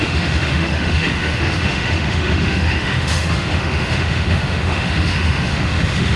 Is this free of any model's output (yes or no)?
no